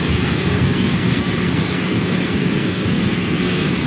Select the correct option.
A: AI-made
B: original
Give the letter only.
A